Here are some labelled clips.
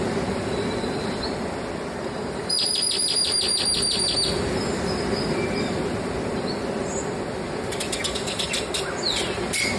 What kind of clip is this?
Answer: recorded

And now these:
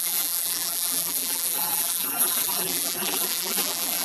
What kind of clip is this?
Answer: remade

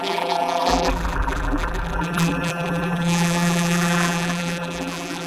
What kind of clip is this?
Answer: remade